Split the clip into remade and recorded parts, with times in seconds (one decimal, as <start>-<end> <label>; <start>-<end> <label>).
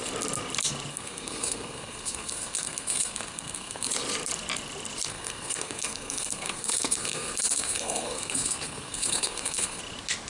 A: 0.0-0.9 recorded; 0.9-3.9 remade; 3.9-5.1 recorded; 5.1-9.8 remade; 9.8-10.3 recorded